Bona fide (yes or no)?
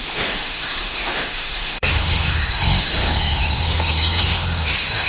no